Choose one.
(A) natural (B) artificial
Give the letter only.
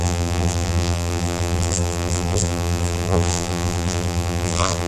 B